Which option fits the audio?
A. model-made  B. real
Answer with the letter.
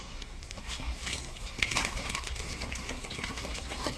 A